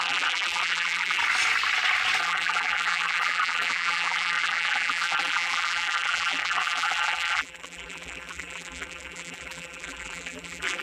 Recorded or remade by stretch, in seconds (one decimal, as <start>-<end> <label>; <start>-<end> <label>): 0.0-1.2 remade; 1.2-2.2 recorded; 2.2-10.8 remade